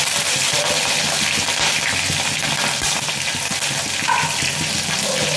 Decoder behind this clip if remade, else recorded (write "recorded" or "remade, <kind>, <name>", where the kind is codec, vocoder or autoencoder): recorded